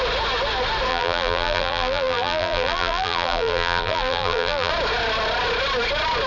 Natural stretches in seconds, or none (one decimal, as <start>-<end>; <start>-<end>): 0.0-0.9; 4.7-6.3